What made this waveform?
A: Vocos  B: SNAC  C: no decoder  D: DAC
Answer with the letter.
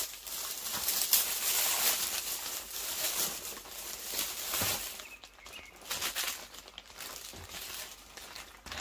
C